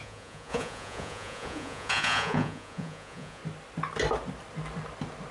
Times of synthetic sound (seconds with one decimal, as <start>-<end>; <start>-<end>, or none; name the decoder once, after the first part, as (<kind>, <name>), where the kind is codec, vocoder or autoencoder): 0.0-3.4 (vocoder, Vocos)